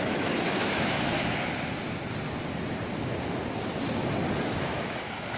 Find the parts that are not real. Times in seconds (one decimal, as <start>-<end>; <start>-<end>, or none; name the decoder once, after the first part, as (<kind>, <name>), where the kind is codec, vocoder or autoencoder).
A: 0.0-1.2 (autoencoder, DAC-VAE); 4.4-5.4